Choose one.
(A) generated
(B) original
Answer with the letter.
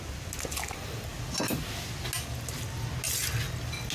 B